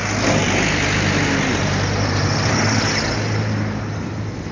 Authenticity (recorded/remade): recorded